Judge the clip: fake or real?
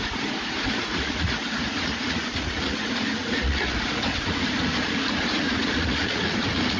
fake